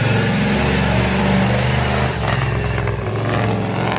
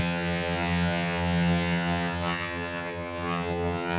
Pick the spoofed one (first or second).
second